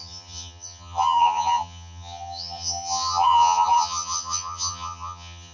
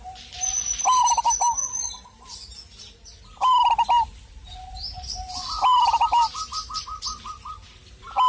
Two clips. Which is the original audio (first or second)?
second